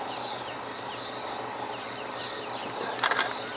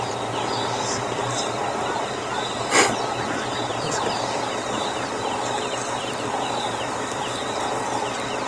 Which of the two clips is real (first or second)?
first